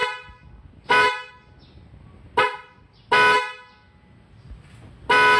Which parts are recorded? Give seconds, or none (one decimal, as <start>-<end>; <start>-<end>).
0.0-5.4

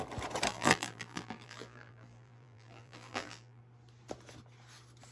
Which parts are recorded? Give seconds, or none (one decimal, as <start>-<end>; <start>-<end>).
0.0-0.5; 3.6-5.1

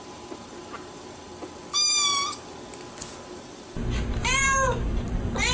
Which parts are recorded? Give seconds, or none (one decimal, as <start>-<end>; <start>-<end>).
1.3-4.1